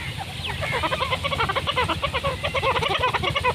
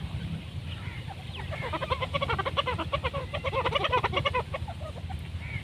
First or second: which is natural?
first